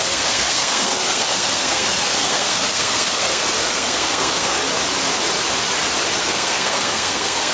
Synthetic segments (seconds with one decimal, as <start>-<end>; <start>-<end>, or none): 0.0-4.6; 6.2-7.5